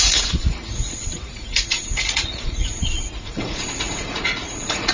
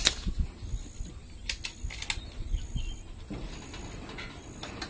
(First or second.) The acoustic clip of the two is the second